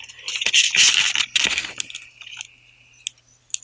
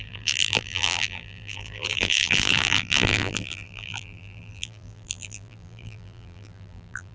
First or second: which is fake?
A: second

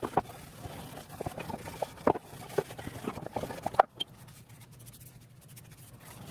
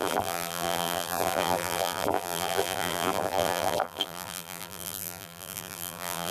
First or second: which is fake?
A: second